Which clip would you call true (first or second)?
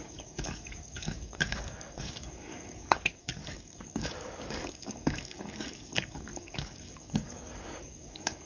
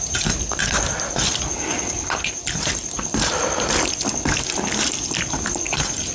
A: second